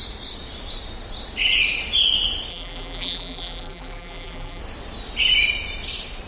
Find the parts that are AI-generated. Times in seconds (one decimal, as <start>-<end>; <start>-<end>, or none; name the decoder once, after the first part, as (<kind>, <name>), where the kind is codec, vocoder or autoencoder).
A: 2.5-4.6 (vocoder, BigVGAN v2)